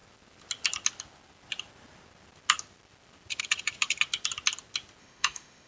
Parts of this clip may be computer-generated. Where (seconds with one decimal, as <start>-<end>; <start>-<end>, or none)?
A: 5.0-5.7